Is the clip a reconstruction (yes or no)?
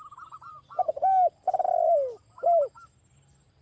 no